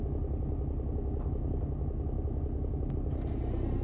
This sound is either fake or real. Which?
real